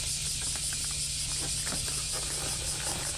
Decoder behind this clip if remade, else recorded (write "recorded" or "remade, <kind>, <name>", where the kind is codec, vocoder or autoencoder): recorded